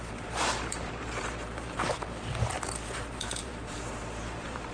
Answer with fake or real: fake